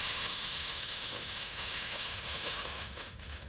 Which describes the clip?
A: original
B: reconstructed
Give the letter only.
B